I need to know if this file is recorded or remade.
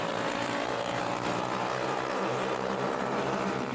remade